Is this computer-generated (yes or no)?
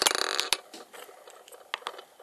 no